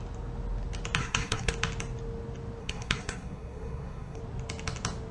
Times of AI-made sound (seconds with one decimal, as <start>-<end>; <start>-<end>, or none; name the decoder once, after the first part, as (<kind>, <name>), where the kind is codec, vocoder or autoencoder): 1.0-1.5 (codec, SNAC); 2.6-4.2